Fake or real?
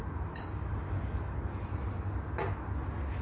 real